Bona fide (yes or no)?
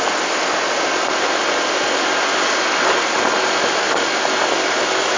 yes